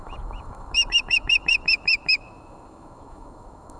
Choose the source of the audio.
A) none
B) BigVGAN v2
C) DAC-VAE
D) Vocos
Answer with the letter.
C